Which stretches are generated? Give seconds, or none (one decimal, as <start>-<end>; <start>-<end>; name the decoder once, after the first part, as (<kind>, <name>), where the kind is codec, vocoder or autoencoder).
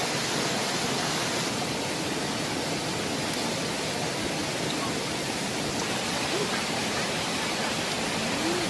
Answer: 6.8-7.7 (vocoder, BigVGAN v2)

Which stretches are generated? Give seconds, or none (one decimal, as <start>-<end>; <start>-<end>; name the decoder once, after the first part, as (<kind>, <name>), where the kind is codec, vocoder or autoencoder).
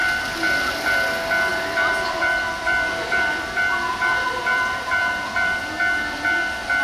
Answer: 0.0-0.7 (vocoder, BigVGAN v2); 1.5-5.6